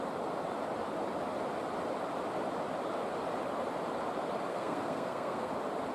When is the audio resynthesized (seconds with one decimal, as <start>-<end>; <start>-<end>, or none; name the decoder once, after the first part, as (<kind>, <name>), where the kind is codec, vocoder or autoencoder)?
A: 4.5-5.5 (codec, SNAC)